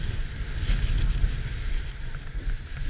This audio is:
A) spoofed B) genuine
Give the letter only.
B